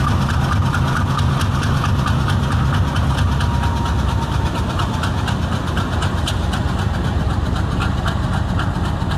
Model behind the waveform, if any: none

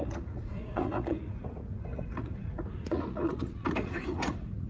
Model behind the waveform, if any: vocoder, Vocos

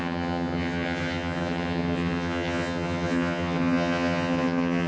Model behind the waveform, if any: vocoder, HiFi-GAN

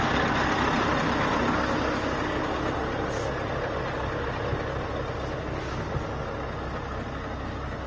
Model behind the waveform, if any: none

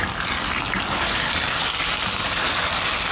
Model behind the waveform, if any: none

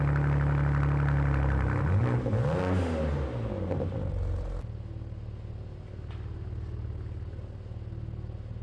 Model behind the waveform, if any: none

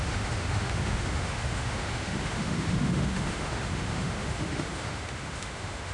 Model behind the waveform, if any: autoencoder, DAC-VAE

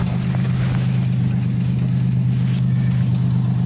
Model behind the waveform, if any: none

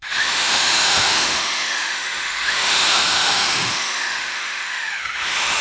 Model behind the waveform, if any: autoencoder, DAC-VAE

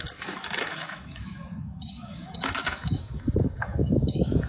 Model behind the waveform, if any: autoencoder, DAC-VAE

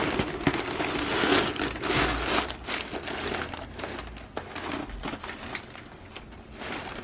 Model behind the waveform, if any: none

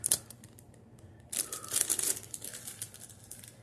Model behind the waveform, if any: vocoder, BigVGAN v2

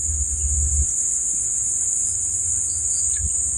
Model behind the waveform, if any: none